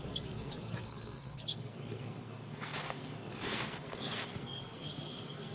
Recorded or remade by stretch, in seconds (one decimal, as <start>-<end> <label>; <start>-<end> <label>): 0.0-5.5 remade